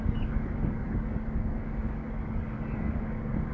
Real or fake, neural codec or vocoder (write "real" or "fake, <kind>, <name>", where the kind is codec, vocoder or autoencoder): fake, codec, DAC